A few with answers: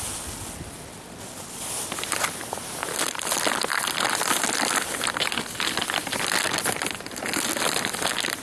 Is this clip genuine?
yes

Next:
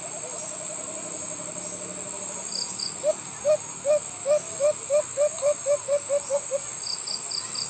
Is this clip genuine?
yes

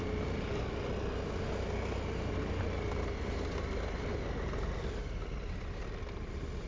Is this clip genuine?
yes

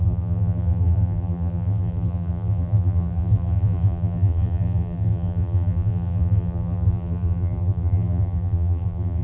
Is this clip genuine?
no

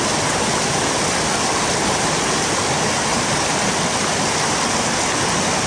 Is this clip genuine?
yes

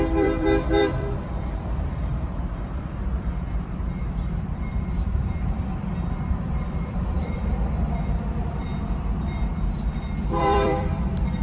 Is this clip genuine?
no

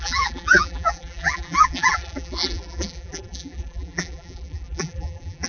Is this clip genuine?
no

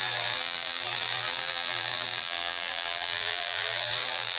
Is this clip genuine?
no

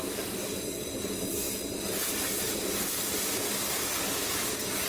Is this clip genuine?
yes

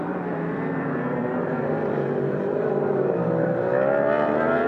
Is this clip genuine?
no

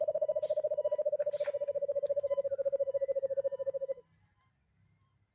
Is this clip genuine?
yes